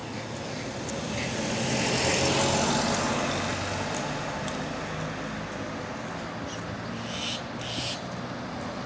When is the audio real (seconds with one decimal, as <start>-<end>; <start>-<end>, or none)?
0.0-8.9